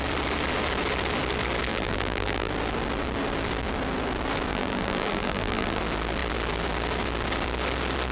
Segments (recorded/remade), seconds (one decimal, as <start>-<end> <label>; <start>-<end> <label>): 0.0-1.7 recorded; 1.7-2.5 remade; 2.5-4.5 recorded; 4.5-5.8 remade; 5.8-8.1 recorded